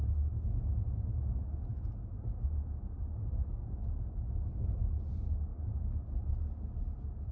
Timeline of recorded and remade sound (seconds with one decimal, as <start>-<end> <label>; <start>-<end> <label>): 0.0-7.3 recorded

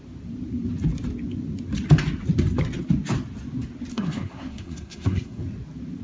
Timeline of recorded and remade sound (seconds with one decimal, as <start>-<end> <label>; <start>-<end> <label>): 0.0-3.9 recorded; 3.9-5.4 remade; 5.4-6.0 recorded

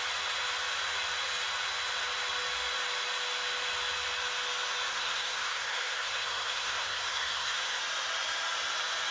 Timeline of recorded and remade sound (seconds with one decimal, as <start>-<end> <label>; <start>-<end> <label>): 0.0-4.9 recorded; 4.9-7.8 remade; 7.8-9.1 recorded